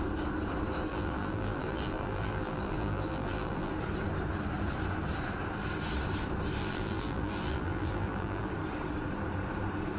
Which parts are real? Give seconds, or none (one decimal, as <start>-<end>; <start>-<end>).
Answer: 0.0-0.9; 3.7-6.6; 8.5-10.0